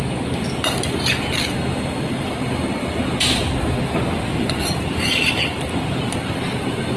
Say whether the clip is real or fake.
real